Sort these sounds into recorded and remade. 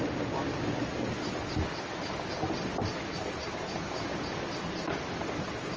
recorded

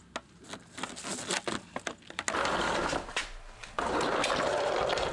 recorded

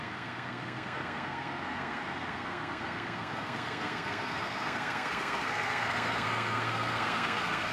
remade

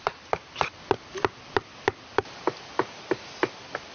recorded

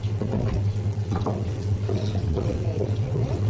remade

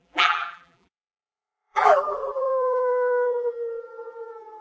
remade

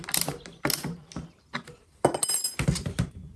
recorded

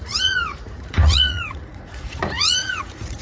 remade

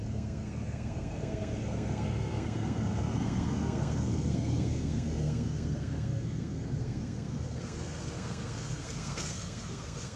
remade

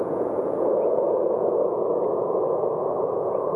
remade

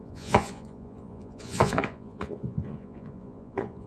remade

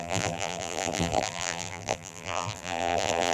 remade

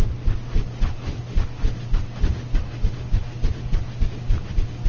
recorded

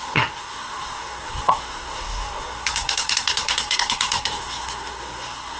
remade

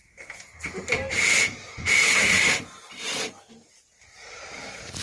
recorded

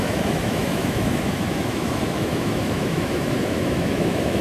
remade